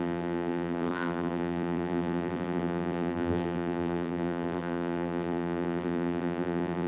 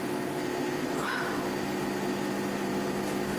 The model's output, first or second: first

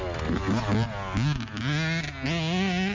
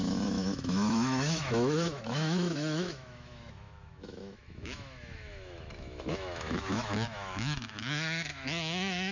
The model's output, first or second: second